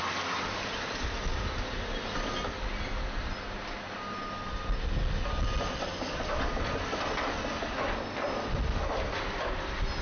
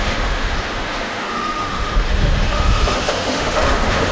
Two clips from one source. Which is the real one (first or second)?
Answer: first